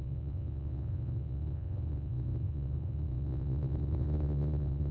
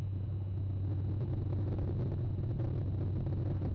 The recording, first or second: second